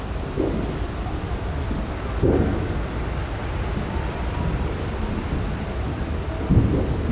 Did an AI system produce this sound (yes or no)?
no